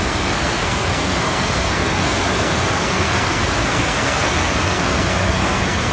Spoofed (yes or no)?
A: yes